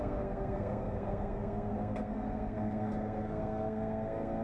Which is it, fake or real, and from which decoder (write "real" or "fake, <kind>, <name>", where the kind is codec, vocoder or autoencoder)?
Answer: fake, codec, SNAC